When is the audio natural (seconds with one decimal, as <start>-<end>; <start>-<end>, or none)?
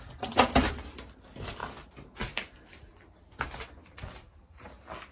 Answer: 0.0-5.1